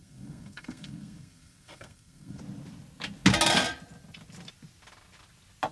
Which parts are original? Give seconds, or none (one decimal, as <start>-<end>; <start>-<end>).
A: 2.4-5.7